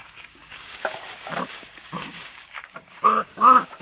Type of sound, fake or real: fake